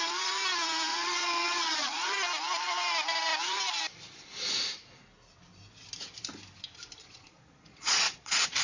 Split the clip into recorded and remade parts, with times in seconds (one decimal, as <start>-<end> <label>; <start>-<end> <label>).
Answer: 0.0-0.9 recorded; 0.9-2.1 remade; 2.1-7.0 recorded; 7.0-8.6 remade